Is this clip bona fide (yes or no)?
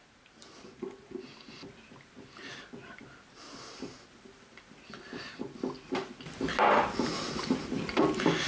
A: yes